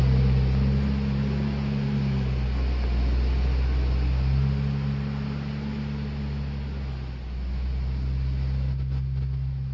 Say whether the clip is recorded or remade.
recorded